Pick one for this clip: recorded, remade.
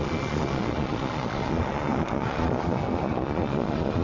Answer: remade